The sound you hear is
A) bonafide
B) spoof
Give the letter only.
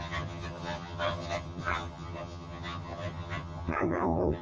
B